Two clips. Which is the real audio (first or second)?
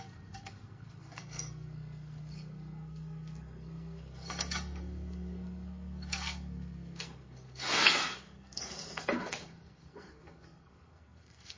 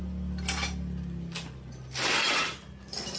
second